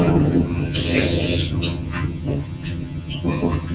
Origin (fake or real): fake